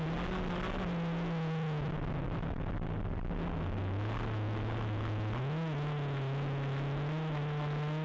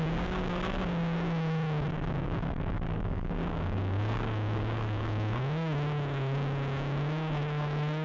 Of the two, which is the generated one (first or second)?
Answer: second